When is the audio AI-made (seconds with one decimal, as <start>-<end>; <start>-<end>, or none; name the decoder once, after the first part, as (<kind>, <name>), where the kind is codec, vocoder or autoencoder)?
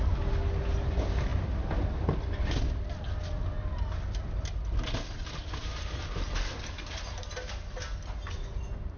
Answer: none